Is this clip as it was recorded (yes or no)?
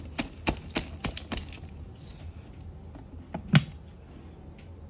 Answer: yes